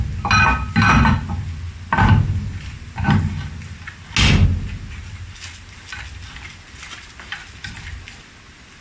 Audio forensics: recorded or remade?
recorded